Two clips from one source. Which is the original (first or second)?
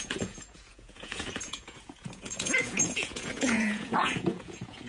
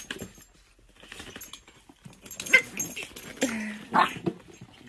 second